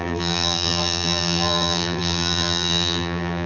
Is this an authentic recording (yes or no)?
no